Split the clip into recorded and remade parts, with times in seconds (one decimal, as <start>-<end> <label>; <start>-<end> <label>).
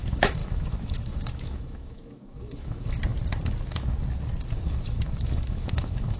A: 0.0-3.0 remade; 3.0-4.7 recorded; 4.7-6.2 remade